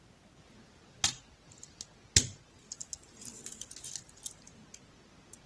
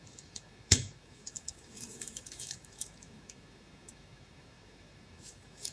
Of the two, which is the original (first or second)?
first